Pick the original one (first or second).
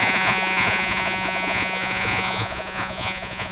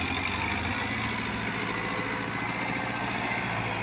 second